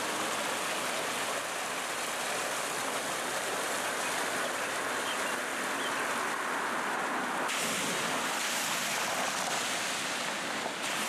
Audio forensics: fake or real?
real